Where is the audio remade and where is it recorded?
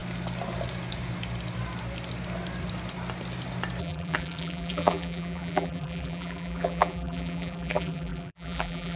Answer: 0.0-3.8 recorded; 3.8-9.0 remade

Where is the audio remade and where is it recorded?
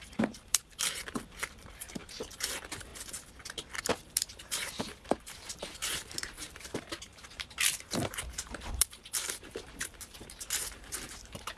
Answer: 0.0-2.9 remade; 2.9-3.8 recorded; 3.8-11.6 remade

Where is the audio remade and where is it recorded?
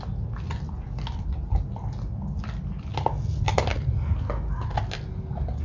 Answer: 0.0-5.6 recorded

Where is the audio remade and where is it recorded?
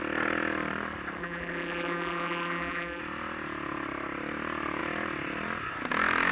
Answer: 0.0-1.2 recorded; 1.2-3.0 remade; 3.0-6.3 recorded